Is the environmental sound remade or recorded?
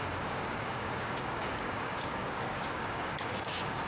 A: remade